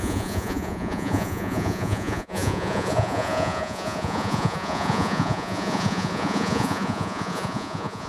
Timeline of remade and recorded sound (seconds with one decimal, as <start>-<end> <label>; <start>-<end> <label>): 0.0-8.1 remade